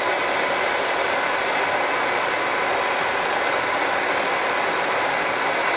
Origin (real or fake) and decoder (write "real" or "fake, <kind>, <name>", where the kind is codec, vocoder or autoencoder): real